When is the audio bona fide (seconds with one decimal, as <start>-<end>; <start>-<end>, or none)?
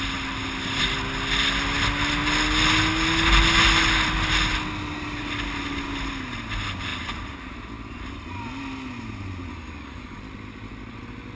0.0-9.5; 10.2-11.4